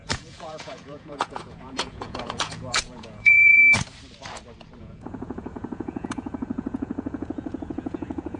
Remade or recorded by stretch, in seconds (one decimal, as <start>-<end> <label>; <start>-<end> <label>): 0.0-3.6 remade; 3.6-4.8 recorded; 4.8-8.4 remade